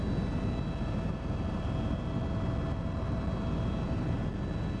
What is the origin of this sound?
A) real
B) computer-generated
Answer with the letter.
A